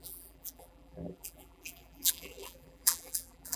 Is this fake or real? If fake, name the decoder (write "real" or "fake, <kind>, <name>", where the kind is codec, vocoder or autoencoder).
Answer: fake, vocoder, BigVGAN v2